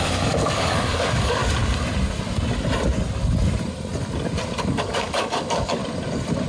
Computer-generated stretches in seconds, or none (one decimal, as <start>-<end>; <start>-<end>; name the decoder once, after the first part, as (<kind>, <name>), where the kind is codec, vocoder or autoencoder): 0.0-1.4 (codec, DAC); 4.6-5.8